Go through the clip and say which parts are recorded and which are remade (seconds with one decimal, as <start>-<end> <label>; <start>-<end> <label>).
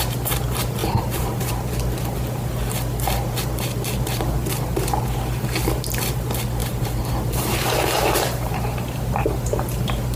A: 0.0-0.8 recorded; 0.8-1.5 remade; 1.5-6.6 recorded; 6.6-9.6 remade; 9.6-10.2 recorded